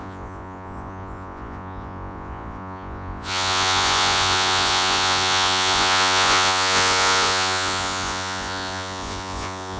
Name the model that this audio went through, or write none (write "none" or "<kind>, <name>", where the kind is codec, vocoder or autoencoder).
vocoder, Vocos